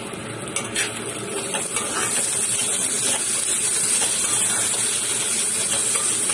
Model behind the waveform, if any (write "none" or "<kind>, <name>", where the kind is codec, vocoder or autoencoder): none